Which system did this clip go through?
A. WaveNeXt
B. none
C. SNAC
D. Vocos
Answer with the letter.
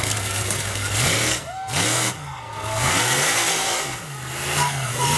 C